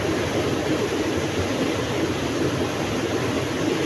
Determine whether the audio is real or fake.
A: real